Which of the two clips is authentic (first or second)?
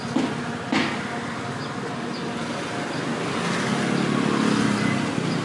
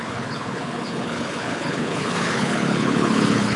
first